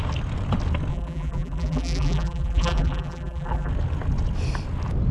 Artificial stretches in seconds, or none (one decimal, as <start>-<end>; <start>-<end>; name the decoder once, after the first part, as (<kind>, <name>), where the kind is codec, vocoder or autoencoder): 0.9-3.7 (vocoder, BigVGAN v2)